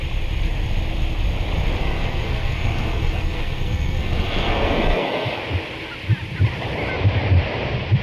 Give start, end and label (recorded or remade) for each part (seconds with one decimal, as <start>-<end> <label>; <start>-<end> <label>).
0.0-1.8 recorded; 1.8-5.4 remade; 5.4-8.0 recorded